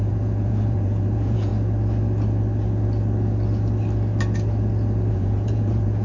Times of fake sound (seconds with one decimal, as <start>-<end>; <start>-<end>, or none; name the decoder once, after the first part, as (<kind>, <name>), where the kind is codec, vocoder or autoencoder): 0.0-1.5 (vocoder, Vocos); 5.1-6.0